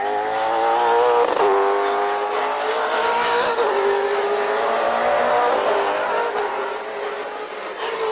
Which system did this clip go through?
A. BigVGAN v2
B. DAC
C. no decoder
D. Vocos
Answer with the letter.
C